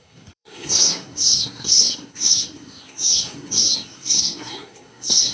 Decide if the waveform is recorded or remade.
remade